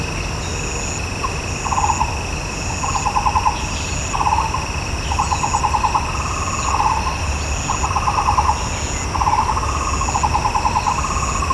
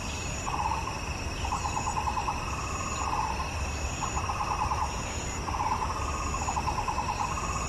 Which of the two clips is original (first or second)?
first